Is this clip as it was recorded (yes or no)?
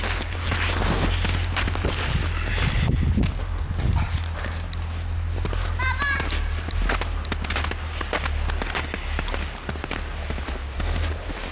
yes